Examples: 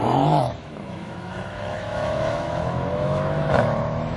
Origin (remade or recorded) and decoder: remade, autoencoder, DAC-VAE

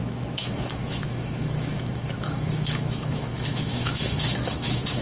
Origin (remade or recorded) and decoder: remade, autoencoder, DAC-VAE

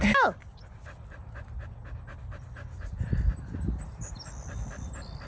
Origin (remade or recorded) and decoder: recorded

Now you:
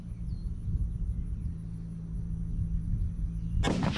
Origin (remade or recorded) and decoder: recorded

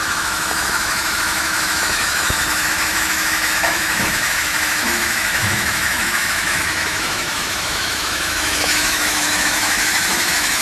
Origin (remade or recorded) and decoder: remade, autoencoder, DAC-VAE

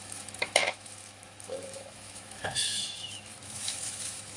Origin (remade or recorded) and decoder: remade, autoencoder, DAC-VAE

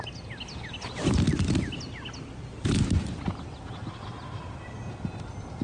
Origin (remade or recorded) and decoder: recorded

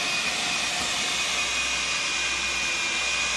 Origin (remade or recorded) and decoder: recorded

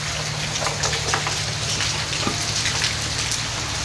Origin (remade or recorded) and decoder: recorded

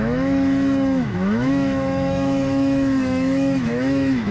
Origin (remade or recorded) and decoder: remade, autoencoder, DAC-VAE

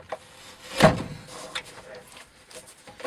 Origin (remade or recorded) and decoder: recorded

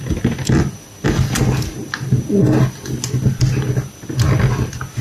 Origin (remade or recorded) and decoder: recorded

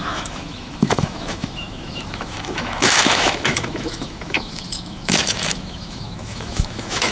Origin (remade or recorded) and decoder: remade, autoencoder, DAC-VAE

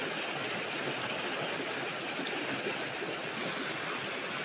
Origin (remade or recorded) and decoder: recorded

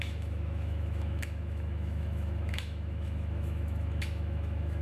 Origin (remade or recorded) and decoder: remade, autoencoder, DAC-VAE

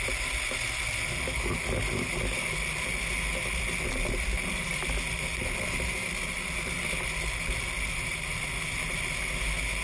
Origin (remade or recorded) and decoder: recorded